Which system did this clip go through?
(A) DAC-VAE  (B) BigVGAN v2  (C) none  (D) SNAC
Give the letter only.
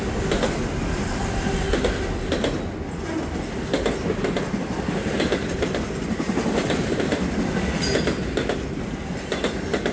C